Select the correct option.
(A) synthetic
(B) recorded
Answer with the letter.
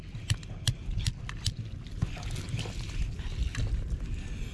B